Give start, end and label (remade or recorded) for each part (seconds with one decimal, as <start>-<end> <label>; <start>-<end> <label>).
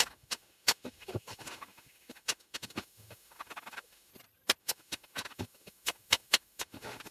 0.0-4.1 remade; 4.1-4.6 recorded; 4.6-7.1 remade